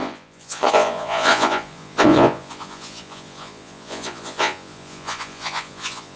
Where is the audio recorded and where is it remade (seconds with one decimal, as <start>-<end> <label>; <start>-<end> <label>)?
0.0-6.2 remade